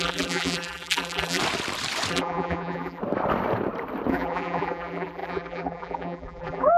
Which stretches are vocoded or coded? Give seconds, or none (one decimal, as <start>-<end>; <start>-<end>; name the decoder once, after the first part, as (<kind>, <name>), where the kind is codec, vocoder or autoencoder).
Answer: 0.0-1.4 (vocoder, BigVGAN v2); 2.1-3.0; 4.1-6.8